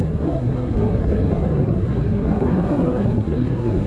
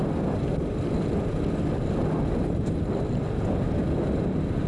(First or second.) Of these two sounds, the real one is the second